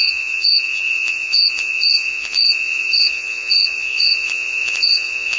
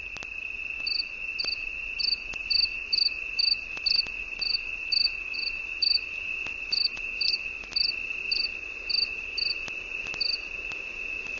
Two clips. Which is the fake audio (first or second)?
first